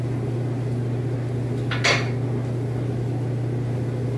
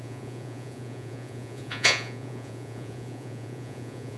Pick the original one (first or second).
first